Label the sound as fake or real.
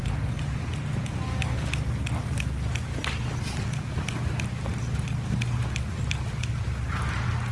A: real